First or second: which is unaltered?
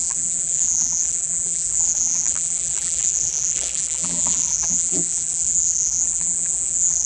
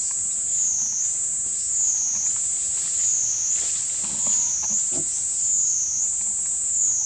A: second